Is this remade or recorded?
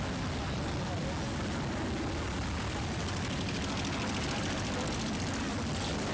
recorded